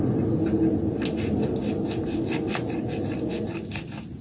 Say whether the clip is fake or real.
real